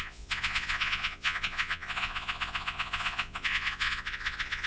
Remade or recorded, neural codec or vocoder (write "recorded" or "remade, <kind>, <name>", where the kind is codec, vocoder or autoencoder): remade, vocoder, Vocos